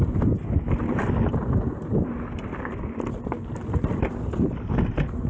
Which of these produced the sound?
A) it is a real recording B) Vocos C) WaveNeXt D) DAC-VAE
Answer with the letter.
A